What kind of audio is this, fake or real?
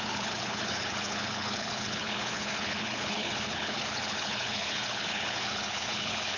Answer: fake